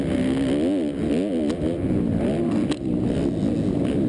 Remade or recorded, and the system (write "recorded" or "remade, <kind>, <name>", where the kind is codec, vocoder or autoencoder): recorded